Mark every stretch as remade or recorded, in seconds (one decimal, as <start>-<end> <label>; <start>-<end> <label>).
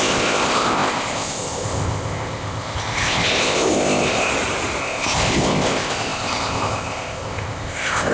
0.0-4.3 remade; 4.3-4.8 recorded; 4.8-8.1 remade